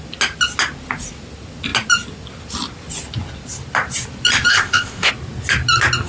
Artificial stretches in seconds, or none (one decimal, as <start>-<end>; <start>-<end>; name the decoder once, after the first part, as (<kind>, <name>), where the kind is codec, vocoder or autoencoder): 4.5-5.1 (codec, ZipCodec)

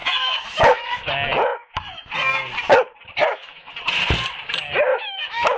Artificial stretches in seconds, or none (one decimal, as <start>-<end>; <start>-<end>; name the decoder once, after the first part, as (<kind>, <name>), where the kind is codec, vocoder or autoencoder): 0.0-1.1 (autoencoder, DAC-VAE); 1.5-2.1; 3.2-3.7; 4.9-5.6

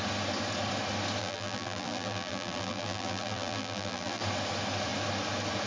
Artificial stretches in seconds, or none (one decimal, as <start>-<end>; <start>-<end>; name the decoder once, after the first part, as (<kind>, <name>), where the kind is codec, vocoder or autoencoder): 1.2-4.2 (vocoder, BigVGAN v2)